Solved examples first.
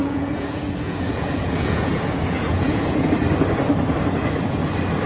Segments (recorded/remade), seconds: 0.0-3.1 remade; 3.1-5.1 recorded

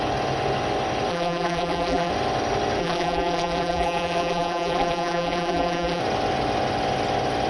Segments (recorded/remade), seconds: 0.0-1.1 recorded; 1.1-2.1 remade; 2.1-2.8 recorded; 2.8-6.0 remade; 6.0-7.5 recorded

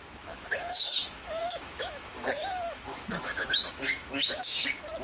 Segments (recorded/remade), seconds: 0.0-5.0 remade

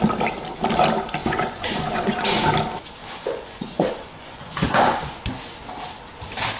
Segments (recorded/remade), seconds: 0.0-1.2 recorded; 1.2-2.4 remade; 2.4-3.0 recorded; 3.0-5.3 remade; 5.3-6.6 recorded

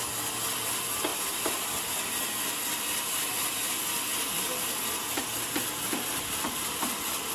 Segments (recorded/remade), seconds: 0.0-1.1 recorded; 1.1-1.8 remade; 1.8-7.3 recorded

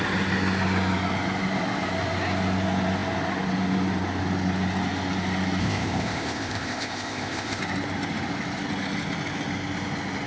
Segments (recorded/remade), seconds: 0.0-5.6 recorded; 5.6-7.6 remade; 7.6-10.3 recorded

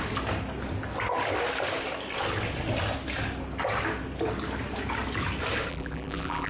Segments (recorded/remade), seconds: 0.0-5.7 recorded; 5.7-6.5 remade